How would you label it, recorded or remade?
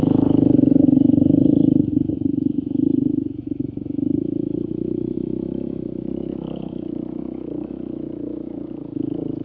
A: remade